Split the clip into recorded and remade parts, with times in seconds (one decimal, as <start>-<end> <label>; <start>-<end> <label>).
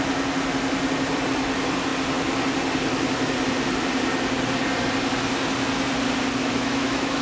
0.0-6.4 recorded; 6.4-7.2 remade